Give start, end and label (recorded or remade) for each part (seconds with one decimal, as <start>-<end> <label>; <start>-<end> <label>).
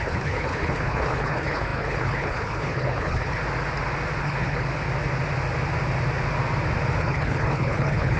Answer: 0.0-3.4 remade; 3.4-4.2 recorded; 4.2-4.7 remade; 4.7-7.0 recorded; 7.0-8.2 remade